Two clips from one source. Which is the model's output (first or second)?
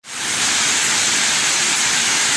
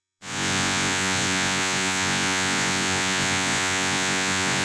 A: second